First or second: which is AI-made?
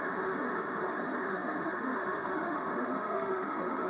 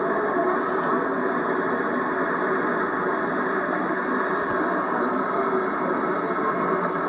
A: first